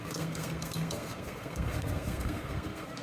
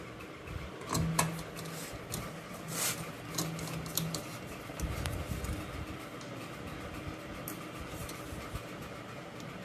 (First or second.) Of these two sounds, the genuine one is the second